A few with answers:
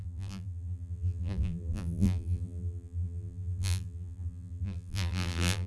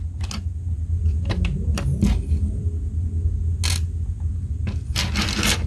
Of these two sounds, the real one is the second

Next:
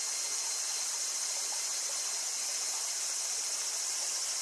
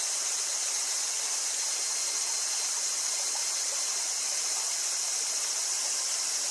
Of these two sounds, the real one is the first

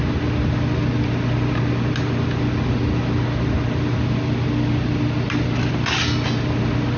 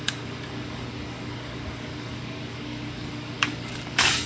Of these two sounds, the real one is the first